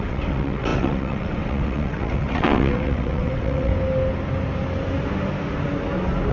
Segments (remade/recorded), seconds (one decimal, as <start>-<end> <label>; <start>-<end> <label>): 0.0-3.7 remade; 3.7-6.3 recorded